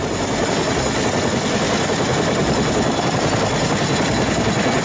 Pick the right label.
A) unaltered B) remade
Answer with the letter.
A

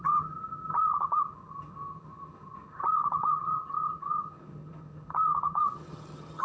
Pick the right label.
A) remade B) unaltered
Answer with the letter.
A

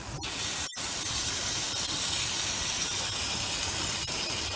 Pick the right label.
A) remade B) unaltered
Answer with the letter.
B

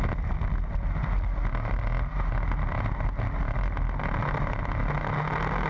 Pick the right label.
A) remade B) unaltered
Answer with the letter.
B